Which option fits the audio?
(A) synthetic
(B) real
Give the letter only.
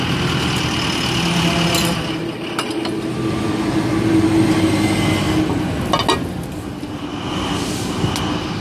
B